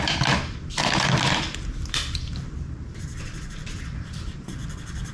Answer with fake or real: fake